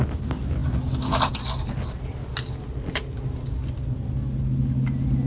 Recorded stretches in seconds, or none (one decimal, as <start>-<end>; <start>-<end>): 0.0-5.3